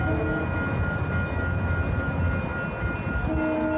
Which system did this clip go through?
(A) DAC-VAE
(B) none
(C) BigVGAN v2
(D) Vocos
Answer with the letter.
B